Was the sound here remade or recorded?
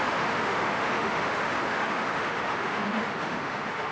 remade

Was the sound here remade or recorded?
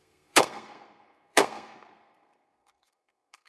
remade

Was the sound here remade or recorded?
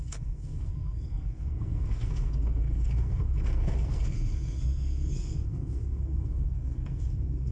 remade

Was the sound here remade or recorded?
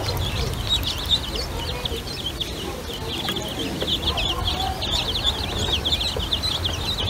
recorded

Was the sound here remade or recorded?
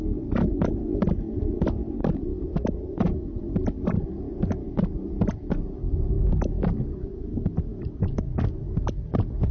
recorded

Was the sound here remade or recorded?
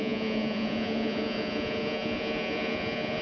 remade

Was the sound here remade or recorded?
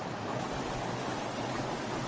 recorded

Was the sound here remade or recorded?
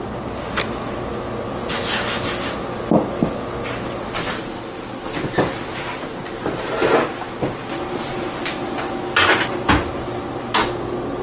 recorded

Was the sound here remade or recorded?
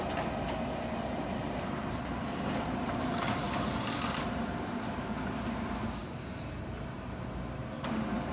remade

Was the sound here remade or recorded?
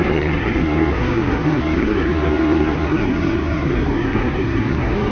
remade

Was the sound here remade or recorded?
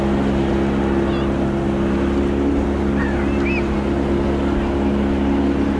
recorded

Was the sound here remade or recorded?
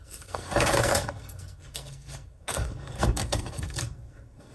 remade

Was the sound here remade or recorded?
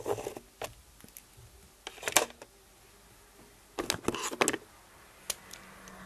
recorded